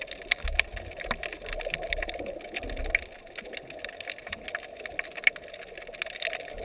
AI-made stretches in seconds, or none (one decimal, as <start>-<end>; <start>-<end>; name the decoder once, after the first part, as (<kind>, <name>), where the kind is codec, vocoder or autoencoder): none